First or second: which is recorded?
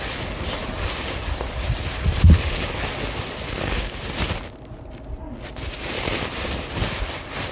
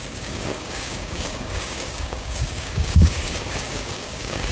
first